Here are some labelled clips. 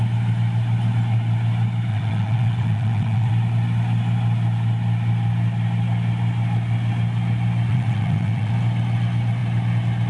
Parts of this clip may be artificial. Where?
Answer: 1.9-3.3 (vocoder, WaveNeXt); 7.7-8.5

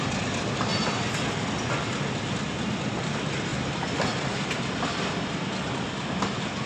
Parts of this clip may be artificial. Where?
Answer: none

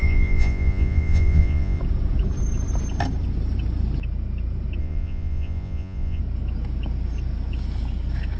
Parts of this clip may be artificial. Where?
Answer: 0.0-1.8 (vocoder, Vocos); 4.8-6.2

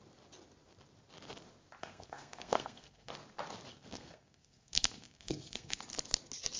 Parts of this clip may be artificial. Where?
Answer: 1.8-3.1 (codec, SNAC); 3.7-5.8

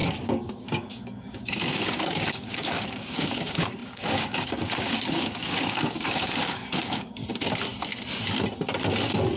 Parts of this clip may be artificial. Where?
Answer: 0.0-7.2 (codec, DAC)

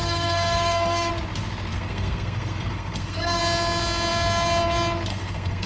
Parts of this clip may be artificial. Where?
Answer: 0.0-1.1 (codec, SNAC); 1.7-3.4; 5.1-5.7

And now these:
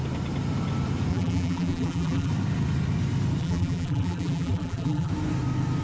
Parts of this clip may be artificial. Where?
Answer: 1.1-2.3 (vocoder, BigVGAN v2); 3.4-5.1